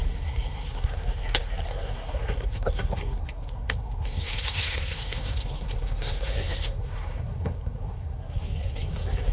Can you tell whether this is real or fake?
fake